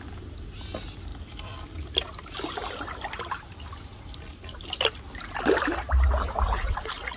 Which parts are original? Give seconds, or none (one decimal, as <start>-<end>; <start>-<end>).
0.0-7.2